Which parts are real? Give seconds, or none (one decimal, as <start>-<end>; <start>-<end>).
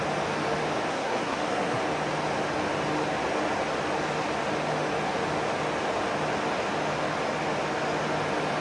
0.0-0.9; 1.8-8.6